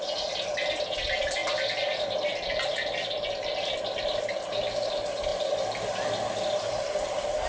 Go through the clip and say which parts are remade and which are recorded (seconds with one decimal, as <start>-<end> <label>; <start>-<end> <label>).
0.0-7.5 recorded